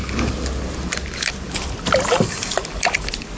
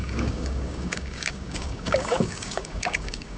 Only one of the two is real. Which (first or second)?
first